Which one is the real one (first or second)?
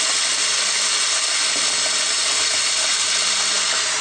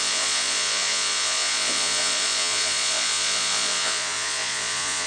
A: first